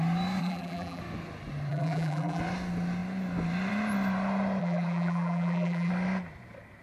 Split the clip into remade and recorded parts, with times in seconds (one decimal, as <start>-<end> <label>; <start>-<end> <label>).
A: 0.0-0.4 recorded; 0.4-1.0 remade; 1.0-1.7 recorded; 1.7-2.4 remade; 2.4-4.6 recorded; 4.6-5.9 remade; 5.9-6.8 recorded